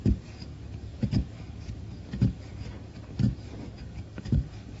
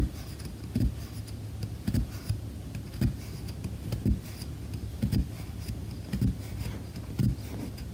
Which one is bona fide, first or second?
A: second